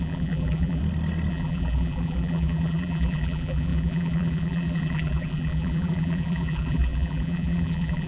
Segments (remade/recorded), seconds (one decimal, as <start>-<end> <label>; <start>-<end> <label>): 0.0-0.8 remade; 0.8-1.3 recorded; 1.3-8.1 remade

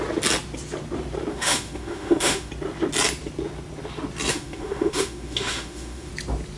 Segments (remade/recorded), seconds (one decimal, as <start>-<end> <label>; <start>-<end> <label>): 0.0-1.3 recorded; 1.3-2.5 remade; 2.5-4.3 recorded; 4.3-6.1 remade; 6.1-6.6 recorded

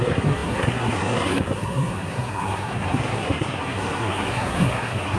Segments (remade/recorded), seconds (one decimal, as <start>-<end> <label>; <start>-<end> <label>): 0.0-5.2 remade

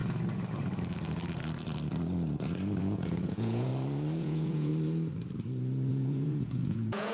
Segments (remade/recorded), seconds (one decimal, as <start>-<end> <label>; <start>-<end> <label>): 0.0-2.8 recorded; 2.8-3.7 remade; 3.7-4.2 recorded; 4.2-4.7 remade; 4.7-5.9 recorded; 5.9-7.1 remade

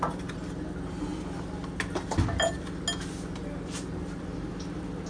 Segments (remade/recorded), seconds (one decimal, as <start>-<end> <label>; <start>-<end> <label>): 0.0-5.1 recorded

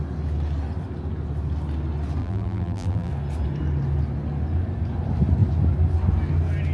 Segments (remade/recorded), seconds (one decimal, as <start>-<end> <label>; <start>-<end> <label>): 0.0-2.2 recorded; 2.2-3.1 remade; 3.1-6.7 recorded

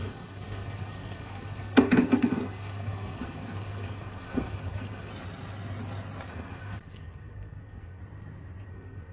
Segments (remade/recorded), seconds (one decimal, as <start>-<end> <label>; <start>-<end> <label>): 0.0-5.1 remade; 5.1-6.3 recorded; 6.3-8.0 remade; 8.0-8.7 recorded; 8.7-9.1 remade

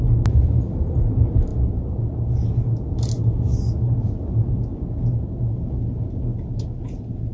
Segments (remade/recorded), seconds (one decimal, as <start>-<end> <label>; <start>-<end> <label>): 0.0-7.3 recorded